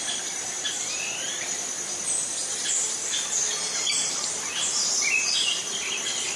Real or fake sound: real